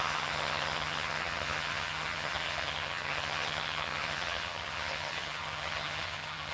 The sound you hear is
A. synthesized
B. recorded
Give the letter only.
A